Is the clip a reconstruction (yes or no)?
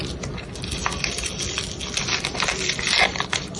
no